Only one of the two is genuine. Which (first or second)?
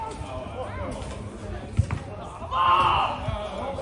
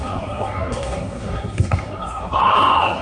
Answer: first